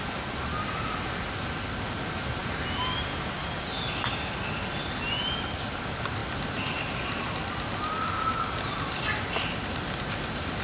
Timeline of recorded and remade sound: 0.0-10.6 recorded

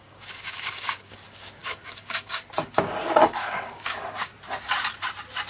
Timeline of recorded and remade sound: 0.0-4.3 remade; 4.3-5.5 recorded

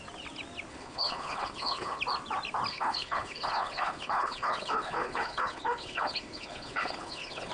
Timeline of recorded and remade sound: 0.0-0.7 recorded; 0.7-2.0 remade; 2.0-2.7 recorded; 2.7-7.5 remade

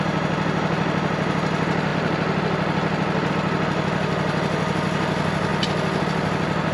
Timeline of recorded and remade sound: 0.0-6.7 recorded

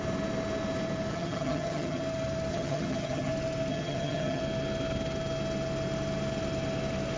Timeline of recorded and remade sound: 0.0-1.1 recorded; 1.1-2.0 remade; 2.0-2.5 recorded; 2.5-3.3 remade; 3.3-3.7 recorded; 3.7-4.4 remade; 4.4-7.2 recorded

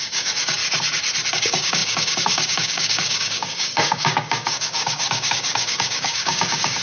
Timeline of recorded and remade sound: 0.0-0.6 remade; 0.6-1.3 recorded; 1.3-6.8 remade

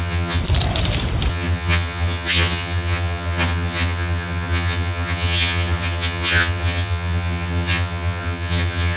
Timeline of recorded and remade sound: 0.0-0.4 remade; 0.4-1.3 recorded; 1.3-9.0 remade

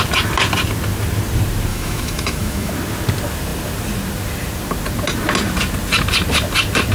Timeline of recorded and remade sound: 0.0-1.7 recorded; 1.7-2.7 remade; 2.7-6.9 recorded